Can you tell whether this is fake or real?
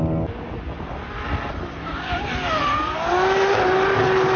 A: real